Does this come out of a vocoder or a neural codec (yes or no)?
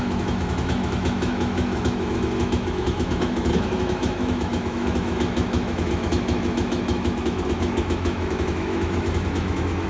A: yes